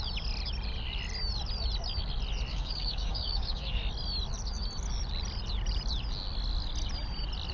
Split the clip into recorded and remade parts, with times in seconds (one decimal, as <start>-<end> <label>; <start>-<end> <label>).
0.0-2.5 recorded; 2.5-3.8 remade; 3.8-7.5 recorded